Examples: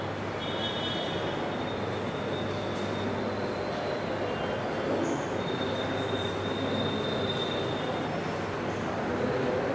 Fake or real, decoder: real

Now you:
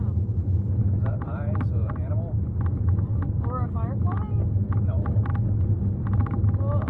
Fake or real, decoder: real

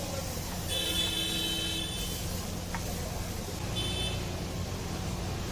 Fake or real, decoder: real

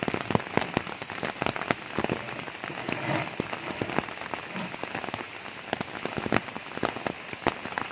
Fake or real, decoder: real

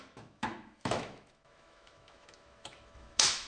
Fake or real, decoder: fake, autoencoder, DAC-VAE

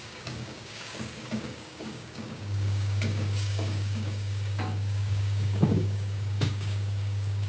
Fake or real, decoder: fake, codec, DAC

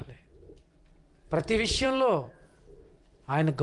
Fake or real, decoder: fake, vocoder, BigVGAN v2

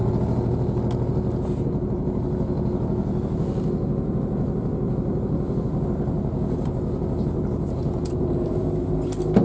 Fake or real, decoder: real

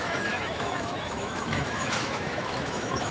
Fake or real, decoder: fake, autoencoder, DAC-VAE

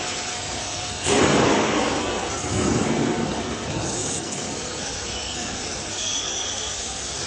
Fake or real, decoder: fake, codec, SNAC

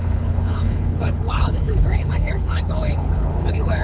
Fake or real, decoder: fake, codec, HILCodec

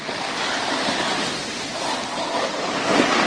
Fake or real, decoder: real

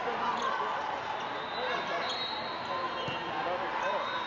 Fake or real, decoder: real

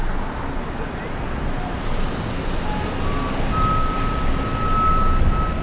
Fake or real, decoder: real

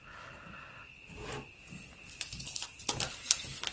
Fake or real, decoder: real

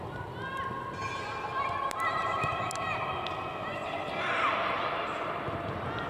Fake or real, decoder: real